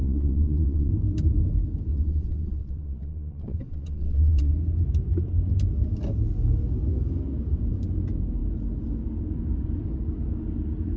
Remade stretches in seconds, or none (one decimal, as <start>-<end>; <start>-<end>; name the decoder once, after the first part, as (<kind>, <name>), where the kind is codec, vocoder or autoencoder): 0.0-0.9 (vocoder, WaveNeXt); 1.9-4.5